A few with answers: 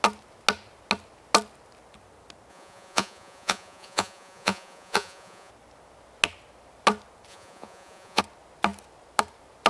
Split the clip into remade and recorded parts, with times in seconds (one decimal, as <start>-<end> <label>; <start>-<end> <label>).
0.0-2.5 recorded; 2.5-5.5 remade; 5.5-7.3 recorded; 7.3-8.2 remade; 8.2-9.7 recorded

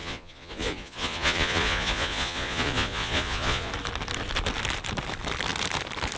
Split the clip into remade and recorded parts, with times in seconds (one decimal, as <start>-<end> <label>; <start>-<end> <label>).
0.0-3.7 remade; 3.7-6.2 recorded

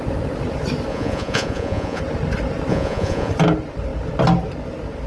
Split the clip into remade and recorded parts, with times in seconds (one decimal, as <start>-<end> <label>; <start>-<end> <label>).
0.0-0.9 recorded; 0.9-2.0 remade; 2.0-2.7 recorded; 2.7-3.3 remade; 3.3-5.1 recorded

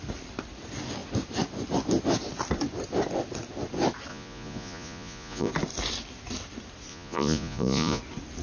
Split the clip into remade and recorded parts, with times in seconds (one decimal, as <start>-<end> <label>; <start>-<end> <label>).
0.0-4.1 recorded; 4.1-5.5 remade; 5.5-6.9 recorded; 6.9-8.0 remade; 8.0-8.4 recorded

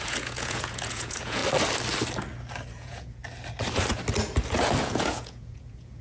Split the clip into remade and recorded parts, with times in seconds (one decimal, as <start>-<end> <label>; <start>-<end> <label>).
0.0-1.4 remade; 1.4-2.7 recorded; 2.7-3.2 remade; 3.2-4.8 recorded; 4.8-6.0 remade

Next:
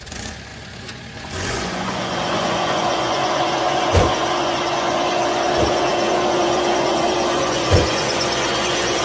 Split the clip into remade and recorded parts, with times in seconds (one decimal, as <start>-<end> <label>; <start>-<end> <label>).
0.0-9.0 remade